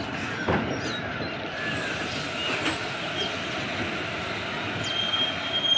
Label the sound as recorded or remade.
recorded